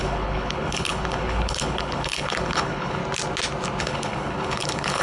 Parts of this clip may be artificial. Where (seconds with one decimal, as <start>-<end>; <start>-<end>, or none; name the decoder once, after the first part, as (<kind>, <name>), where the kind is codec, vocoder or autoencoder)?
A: 0.0-3.0 (codec, HILCodec); 3.8-5.0